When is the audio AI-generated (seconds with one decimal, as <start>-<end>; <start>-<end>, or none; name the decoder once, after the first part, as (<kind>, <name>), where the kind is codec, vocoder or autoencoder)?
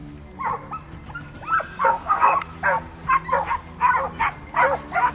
1.8-2.3 (codec, SNAC)